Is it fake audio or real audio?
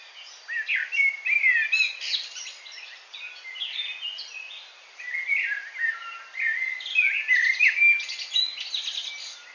real